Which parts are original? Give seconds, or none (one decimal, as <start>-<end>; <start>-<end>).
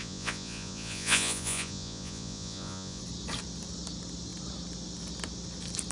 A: 3.0-5.9